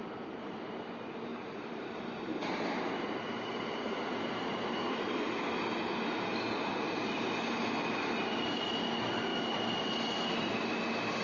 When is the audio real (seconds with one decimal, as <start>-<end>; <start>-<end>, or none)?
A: 0.0-1.3; 4.7-9.3; 9.9-11.2